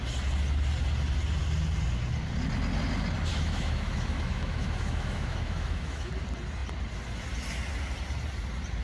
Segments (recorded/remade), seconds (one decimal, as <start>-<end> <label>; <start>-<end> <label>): 0.0-3.3 recorded; 3.3-6.1 remade; 6.1-8.8 recorded